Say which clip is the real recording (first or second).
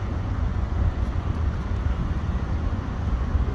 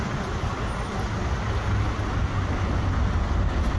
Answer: second